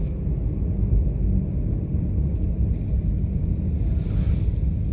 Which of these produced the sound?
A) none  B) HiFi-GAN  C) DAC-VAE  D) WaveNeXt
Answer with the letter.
A